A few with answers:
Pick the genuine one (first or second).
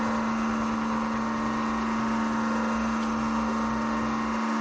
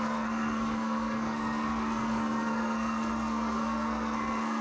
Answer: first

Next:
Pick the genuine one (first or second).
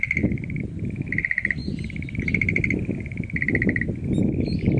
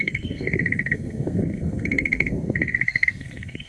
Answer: first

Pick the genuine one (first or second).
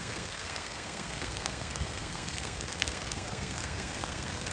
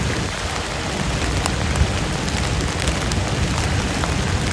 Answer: second